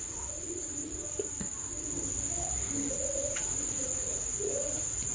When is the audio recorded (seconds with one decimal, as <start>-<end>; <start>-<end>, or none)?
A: 0.8-2.9